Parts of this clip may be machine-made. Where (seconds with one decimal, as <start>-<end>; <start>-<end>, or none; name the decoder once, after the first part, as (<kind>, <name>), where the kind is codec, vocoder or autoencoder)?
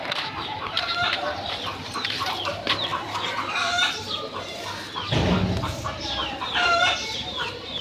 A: 0.0-4.5 (vocoder, BigVGAN v2); 6.5-7.8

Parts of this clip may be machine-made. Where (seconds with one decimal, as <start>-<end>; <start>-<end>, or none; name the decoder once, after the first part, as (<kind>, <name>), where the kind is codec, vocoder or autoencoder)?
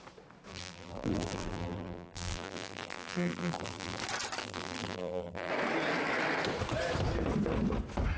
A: 0.5-4.0 (vocoder, BigVGAN v2); 4.4-5.5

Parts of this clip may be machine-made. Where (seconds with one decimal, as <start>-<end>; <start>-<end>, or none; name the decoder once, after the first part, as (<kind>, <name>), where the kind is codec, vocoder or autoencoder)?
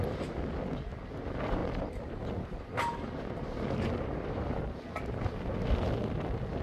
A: none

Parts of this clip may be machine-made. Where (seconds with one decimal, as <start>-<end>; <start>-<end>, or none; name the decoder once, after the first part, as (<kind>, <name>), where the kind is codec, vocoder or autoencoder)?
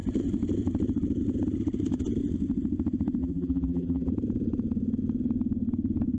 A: 3.2-4.1 (vocoder, BigVGAN v2)